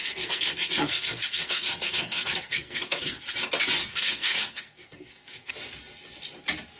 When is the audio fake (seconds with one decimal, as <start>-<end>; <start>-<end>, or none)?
0.0-3.2; 3.8-5.5